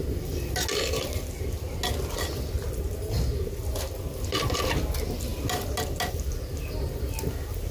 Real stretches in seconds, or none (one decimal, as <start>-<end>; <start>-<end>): 0.0-7.7